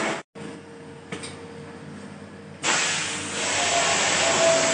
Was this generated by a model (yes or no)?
no